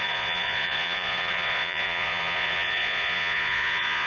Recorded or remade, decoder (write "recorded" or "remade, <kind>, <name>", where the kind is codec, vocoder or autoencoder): remade, vocoder, Vocos